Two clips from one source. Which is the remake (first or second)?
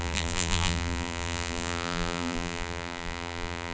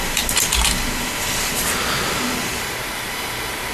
first